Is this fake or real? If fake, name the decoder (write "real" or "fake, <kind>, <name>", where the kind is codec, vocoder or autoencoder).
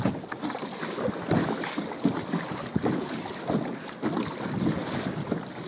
real